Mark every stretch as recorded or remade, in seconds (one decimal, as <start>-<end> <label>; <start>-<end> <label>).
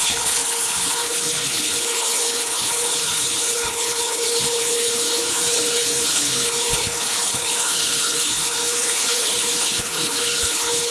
0.0-10.9 remade